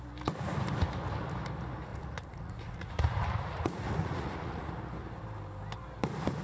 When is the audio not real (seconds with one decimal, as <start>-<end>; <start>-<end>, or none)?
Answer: 1.9-4.7